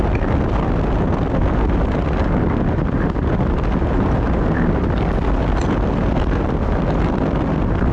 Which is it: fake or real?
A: real